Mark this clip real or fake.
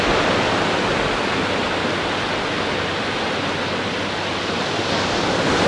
real